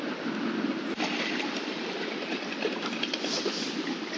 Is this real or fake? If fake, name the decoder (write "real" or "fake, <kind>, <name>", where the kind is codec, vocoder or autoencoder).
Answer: fake, vocoder, BigVGAN v2